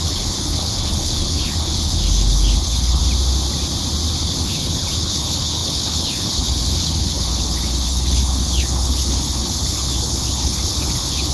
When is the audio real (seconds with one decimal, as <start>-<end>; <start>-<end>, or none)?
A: 3.0-4.2